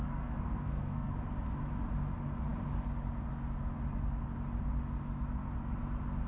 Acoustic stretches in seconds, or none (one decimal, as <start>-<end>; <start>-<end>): 1.1-6.3